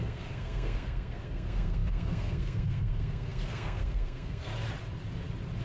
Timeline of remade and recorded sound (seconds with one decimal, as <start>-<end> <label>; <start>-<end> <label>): 0.0-4.5 remade; 4.5-5.6 recorded